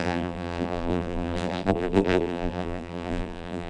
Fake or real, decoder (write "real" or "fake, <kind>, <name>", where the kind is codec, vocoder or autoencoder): fake, vocoder, BigVGAN v2